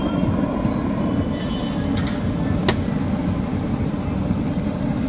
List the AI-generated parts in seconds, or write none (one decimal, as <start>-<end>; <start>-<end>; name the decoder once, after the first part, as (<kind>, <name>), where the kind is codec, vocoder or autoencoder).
none